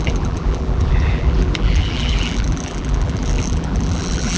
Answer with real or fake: fake